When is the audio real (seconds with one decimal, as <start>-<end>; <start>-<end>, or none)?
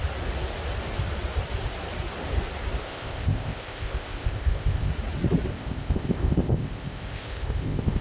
0.0-2.8; 4.9-5.5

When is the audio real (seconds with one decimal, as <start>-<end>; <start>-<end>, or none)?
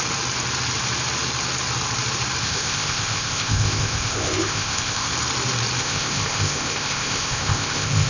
0.0-2.4; 5.1-5.8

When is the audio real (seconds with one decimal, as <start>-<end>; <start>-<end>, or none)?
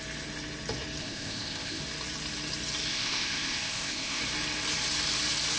0.0-1.0; 1.8-2.9; 4.2-5.6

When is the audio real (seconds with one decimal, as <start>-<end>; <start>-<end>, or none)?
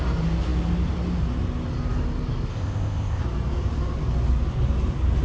0.0-2.5; 3.2-5.2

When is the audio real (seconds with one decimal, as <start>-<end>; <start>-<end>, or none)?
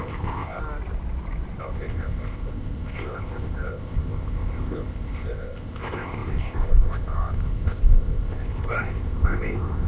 0.6-1.6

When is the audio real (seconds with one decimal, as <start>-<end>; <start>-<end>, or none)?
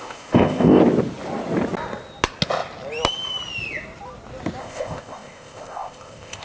0.8-4.6